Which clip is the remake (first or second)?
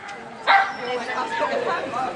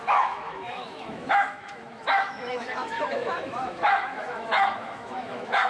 second